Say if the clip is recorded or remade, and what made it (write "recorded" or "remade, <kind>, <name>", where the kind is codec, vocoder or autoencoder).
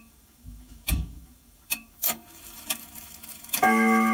remade, autoencoder, DAC-VAE